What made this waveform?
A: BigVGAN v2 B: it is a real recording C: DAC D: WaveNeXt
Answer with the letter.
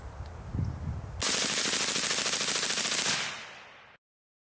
B